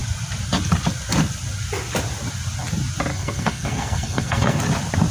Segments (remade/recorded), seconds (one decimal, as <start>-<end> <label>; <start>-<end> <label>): 0.0-3.1 recorded; 3.1-4.6 remade; 4.6-5.1 recorded